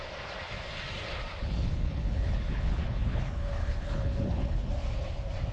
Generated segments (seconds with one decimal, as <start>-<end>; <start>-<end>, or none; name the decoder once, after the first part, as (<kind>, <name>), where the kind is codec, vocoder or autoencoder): 1.4-4.7 (codec, HILCodec)